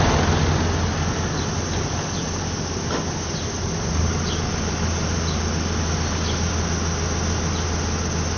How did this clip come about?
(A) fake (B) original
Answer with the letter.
B